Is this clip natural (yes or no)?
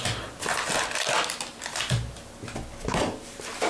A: yes